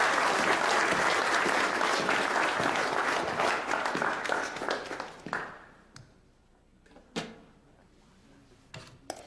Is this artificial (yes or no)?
no